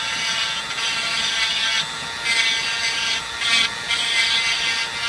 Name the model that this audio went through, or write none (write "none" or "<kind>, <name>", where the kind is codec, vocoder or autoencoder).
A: none